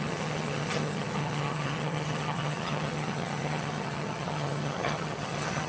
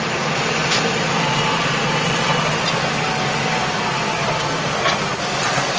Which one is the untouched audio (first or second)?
second